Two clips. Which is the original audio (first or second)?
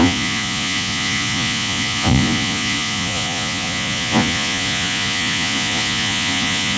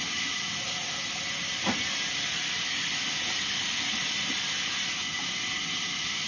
second